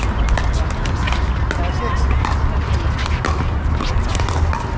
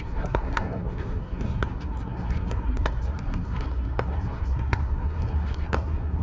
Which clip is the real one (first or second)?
first